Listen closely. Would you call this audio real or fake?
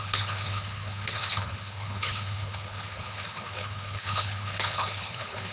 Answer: fake